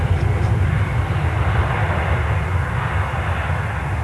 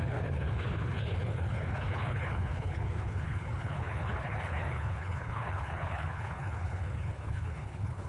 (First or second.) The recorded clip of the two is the first